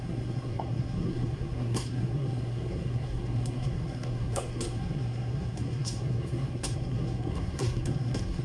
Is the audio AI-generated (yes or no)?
yes